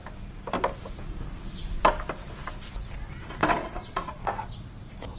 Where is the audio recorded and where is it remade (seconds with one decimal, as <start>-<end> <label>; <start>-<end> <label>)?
0.0-3.6 recorded; 3.6-4.2 remade; 4.2-5.2 recorded